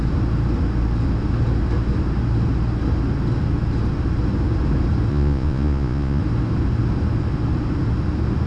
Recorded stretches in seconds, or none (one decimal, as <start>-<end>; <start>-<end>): 0.0-5.1; 6.2-8.5